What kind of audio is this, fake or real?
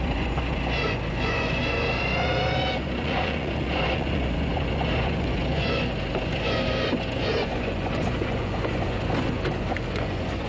fake